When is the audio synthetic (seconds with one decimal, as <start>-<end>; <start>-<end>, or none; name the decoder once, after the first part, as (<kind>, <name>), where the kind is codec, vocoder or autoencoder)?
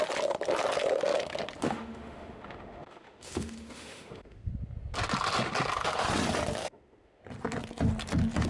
1.6-4.5 (autoencoder, DAC-VAE); 6.6-7.2